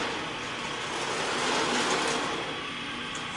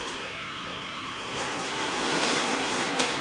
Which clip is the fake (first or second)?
second